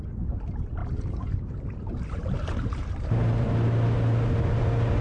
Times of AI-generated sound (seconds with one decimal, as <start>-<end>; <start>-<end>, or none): 0.8-3.1

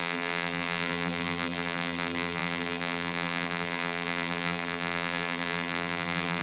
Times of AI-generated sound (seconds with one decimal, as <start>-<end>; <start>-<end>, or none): 0.0-6.4

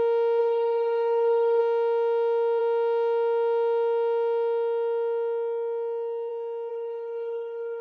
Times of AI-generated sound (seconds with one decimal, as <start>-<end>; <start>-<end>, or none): 0.4-1.6; 6.7-7.8

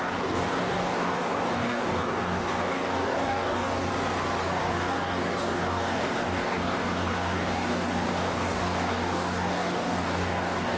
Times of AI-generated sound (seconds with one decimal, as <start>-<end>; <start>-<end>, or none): 0.0-3.9; 4.4-10.8

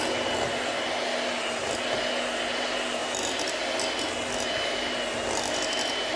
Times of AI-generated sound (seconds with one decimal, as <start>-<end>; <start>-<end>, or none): none

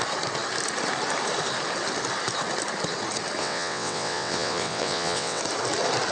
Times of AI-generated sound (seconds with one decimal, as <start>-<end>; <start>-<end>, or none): 3.4-5.4